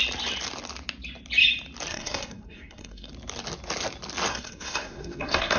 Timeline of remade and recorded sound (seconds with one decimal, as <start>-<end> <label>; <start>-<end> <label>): 0.0-1.9 recorded; 1.9-3.1 remade; 3.1-4.3 recorded; 4.3-5.6 remade

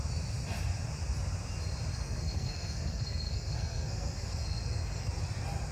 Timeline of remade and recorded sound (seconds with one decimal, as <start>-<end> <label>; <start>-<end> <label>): 0.0-1.9 recorded; 1.9-5.1 remade; 5.1-5.7 recorded

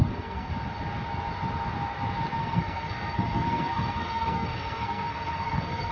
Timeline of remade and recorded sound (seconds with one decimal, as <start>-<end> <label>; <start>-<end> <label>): 0.0-0.5 remade; 0.5-2.4 recorded; 2.4-5.9 remade

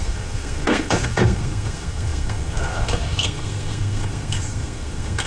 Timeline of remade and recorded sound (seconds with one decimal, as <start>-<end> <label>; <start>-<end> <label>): 0.0-5.3 remade

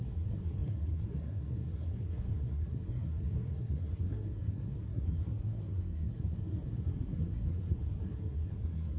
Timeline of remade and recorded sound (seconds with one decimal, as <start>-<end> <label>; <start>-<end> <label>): 0.0-9.0 remade

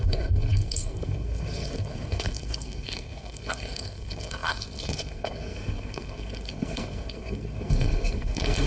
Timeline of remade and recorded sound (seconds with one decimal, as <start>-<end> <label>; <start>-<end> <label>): 0.0-8.7 remade

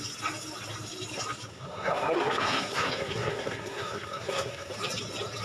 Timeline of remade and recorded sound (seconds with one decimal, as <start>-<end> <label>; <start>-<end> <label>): 0.0-1.5 recorded; 1.5-4.7 remade; 4.7-5.4 recorded

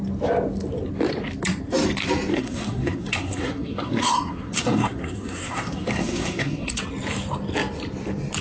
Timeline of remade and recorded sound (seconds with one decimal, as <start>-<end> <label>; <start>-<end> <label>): 0.0-2.3 recorded; 2.3-6.8 remade; 6.8-8.4 recorded